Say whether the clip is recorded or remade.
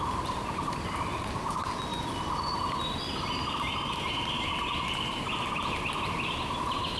recorded